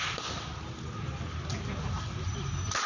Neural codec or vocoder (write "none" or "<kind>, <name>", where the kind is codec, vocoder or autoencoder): none